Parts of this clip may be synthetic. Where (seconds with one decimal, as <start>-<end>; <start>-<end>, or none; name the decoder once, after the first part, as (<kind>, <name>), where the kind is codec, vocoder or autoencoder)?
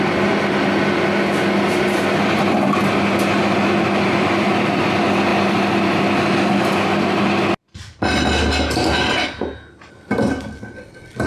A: none